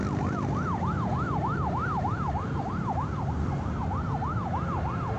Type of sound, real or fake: real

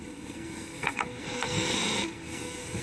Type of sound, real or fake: fake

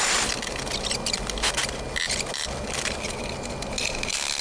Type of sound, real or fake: real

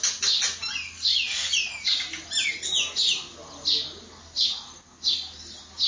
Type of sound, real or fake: real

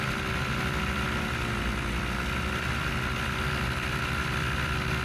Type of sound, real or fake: real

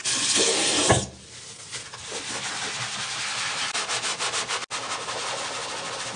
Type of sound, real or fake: real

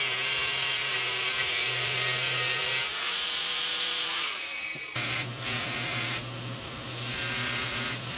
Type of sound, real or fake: real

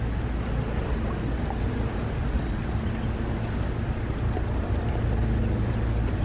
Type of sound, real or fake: real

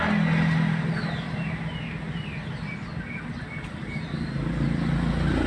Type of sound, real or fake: real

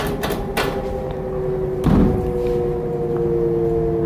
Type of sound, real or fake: real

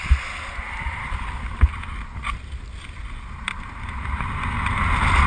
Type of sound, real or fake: real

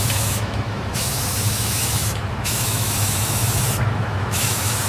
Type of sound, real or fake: fake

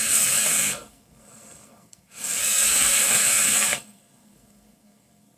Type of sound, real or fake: fake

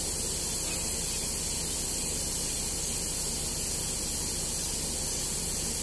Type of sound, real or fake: real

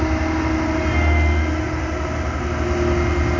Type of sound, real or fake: real